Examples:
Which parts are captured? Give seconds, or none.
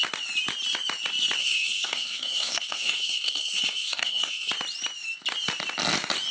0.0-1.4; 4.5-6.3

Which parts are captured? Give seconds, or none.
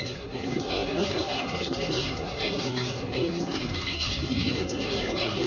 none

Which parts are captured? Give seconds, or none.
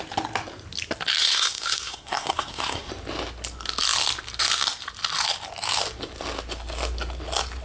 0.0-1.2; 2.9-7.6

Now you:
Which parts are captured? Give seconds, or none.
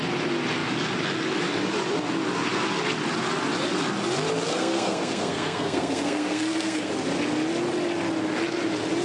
0.0-4.5; 6.9-9.0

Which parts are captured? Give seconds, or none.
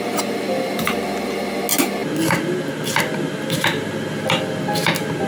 0.0-5.3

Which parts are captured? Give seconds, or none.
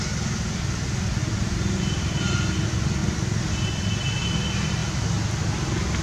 0.0-6.0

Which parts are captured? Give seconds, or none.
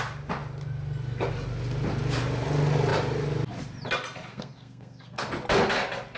0.0-4.3; 5.2-6.2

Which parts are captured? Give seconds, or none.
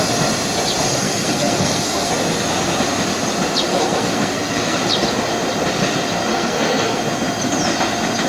0.0-0.9; 2.1-3.7; 4.8-6.3; 7.0-8.3